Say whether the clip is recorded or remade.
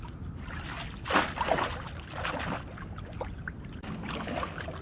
recorded